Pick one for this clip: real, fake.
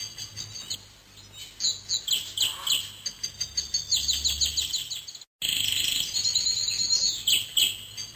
real